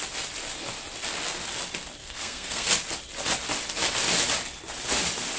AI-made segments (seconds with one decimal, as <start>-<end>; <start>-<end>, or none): 2.0-2.7